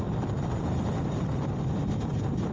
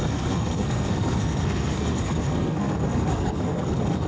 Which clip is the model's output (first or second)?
second